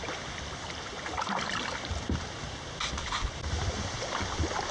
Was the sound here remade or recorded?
recorded